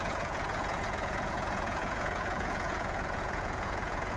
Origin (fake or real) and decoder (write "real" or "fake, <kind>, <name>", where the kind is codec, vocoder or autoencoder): fake, vocoder, Vocos